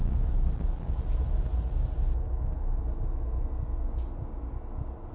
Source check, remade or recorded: recorded